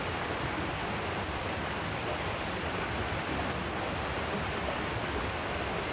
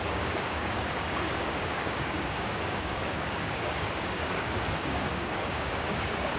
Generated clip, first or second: second